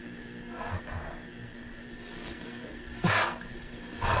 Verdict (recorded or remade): remade